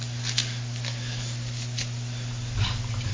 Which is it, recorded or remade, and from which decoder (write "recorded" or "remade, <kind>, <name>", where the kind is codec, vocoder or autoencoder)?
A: recorded